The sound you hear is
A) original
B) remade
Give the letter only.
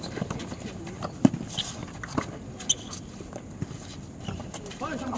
A